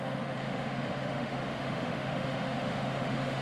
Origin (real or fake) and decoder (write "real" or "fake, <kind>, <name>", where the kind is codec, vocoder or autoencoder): fake, autoencoder, DAC-VAE